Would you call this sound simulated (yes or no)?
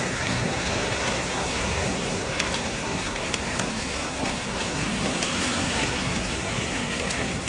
yes